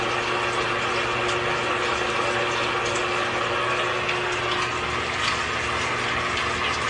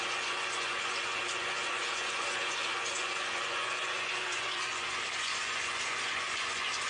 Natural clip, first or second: first